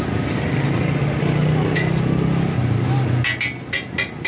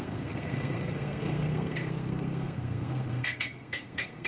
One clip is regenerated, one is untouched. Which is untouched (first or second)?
first